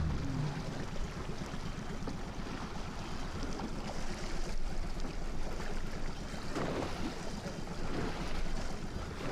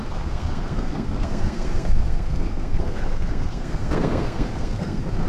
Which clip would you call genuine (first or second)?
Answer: first